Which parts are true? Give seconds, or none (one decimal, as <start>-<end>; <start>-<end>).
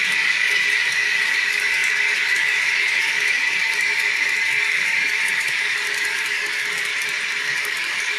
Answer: 6.9-7.4